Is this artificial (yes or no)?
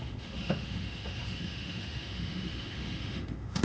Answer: yes